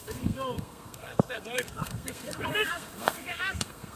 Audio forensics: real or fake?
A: fake